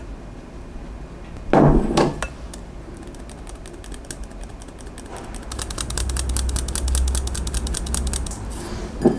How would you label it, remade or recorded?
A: recorded